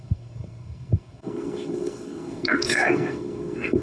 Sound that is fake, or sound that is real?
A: fake